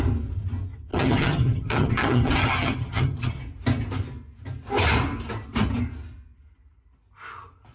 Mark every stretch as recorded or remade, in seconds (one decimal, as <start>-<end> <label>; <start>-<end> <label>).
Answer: 0.0-0.9 recorded; 0.9-3.4 remade; 3.4-7.7 recorded